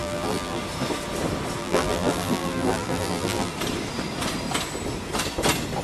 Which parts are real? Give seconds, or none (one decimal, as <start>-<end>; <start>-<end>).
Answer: 0.6-1.6; 3.5-5.8